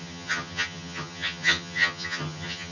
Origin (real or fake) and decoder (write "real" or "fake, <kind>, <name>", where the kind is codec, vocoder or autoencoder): fake, vocoder, HiFi-GAN